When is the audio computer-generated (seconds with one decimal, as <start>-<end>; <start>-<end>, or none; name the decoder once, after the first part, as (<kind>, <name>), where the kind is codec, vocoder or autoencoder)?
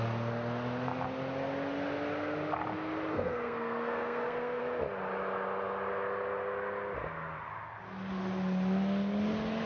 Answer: 3.1-4.6 (codec, SNAC)